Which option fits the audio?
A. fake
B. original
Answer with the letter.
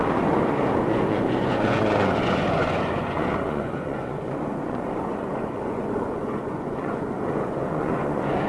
A